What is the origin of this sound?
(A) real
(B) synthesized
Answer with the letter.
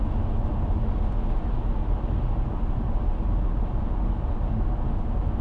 A